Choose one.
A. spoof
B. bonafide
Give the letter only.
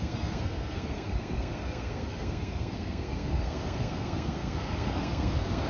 A